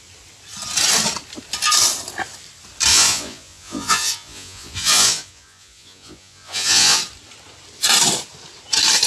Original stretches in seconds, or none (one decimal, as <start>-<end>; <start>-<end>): 0.0-2.9; 7.0-9.1